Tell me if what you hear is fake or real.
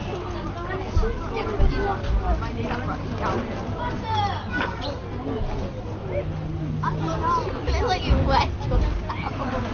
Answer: real